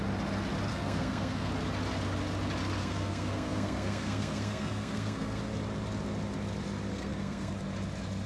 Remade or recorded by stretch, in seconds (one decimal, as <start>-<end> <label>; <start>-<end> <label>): 0.0-0.7 recorded; 0.7-1.5 remade; 1.5-2.8 recorded; 2.8-5.4 remade; 5.4-6.9 recorded; 6.9-7.5 remade; 7.5-8.3 recorded